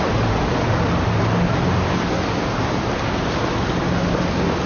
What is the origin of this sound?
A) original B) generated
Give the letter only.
A